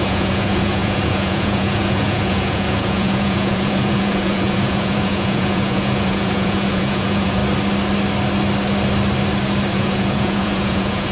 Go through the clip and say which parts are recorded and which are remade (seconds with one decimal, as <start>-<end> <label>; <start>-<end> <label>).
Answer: 0.0-7.4 remade; 7.4-9.7 recorded; 9.7-11.1 remade